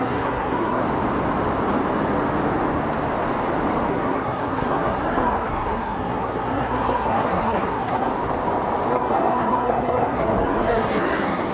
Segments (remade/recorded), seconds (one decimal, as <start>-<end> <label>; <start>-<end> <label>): 0.0-0.8 remade; 0.8-3.9 recorded; 3.9-8.1 remade; 8.1-8.9 recorded; 8.9-11.5 remade

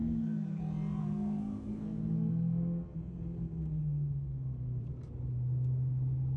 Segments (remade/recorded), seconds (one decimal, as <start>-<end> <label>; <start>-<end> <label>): 0.0-0.6 remade; 0.6-1.0 recorded; 1.0-4.8 remade; 4.8-6.4 recorded

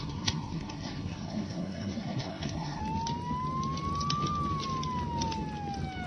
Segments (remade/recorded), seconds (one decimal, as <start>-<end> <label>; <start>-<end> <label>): 0.0-2.8 remade; 2.8-6.1 recorded

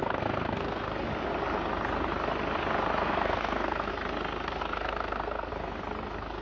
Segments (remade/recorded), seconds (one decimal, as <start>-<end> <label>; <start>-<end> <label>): 0.0-0.9 remade; 0.9-3.0 recorded; 3.0-3.9 remade; 3.9-4.6 recorded; 4.6-5.5 remade; 5.5-6.4 recorded

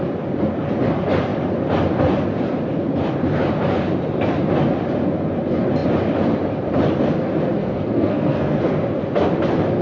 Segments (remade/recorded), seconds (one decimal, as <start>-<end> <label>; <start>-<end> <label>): 0.0-7.6 recorded; 7.6-8.6 remade; 8.6-9.8 recorded

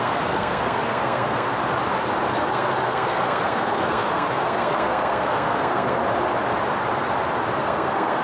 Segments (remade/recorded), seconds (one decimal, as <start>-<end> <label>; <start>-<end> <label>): 0.0-1.5 remade; 1.5-2.5 recorded; 2.5-6.0 remade; 6.0-7.6 recorded; 7.6-8.2 remade